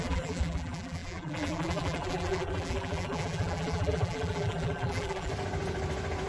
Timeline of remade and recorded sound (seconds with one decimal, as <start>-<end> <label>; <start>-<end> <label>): 0.0-5.3 remade; 5.3-6.3 recorded